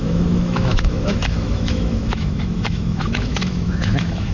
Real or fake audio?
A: fake